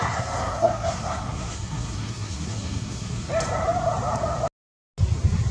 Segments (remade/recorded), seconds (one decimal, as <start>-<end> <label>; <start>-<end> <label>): 0.0-3.3 remade; 3.3-5.5 recorded